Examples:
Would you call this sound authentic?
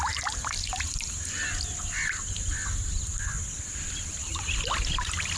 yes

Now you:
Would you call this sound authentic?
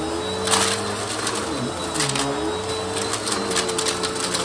yes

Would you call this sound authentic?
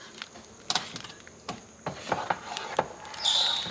yes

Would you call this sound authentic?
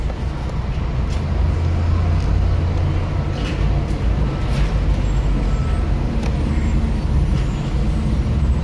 yes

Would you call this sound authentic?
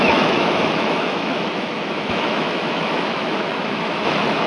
no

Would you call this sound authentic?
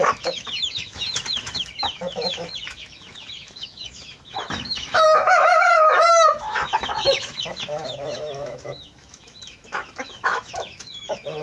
no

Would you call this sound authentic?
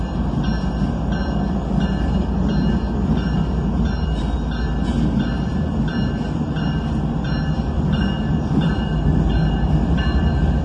yes